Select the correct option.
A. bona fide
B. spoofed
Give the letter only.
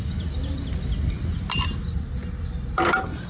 A